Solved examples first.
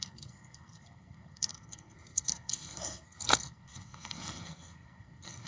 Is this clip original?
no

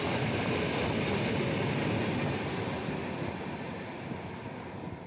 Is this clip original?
yes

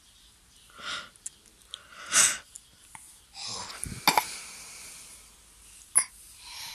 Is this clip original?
yes